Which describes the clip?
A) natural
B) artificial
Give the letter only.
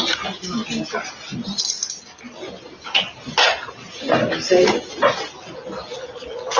A